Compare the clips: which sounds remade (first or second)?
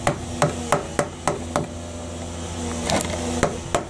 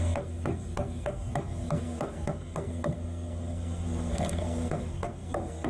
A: second